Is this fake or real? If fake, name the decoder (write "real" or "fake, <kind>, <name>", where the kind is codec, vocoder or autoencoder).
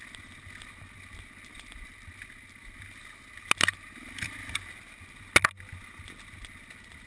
real